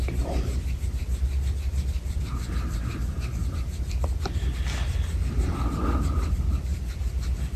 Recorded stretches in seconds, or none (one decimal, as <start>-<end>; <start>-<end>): 0.0-7.6